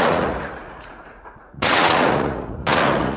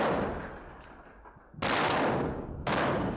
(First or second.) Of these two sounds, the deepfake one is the first